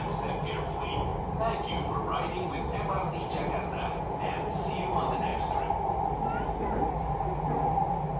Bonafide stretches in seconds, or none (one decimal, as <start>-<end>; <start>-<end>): 0.0-8.2